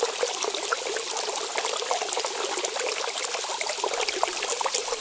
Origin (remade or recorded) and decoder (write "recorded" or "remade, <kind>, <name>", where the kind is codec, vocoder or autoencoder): recorded